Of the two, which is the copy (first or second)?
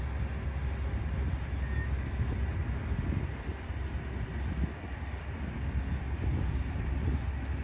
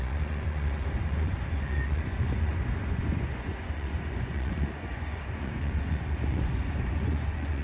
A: second